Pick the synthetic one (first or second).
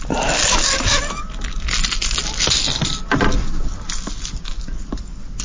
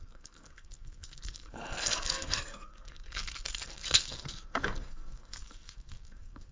second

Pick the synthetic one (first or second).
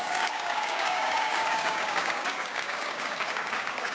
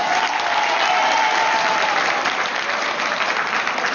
first